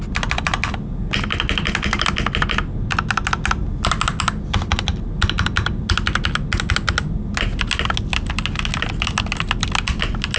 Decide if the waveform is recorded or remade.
recorded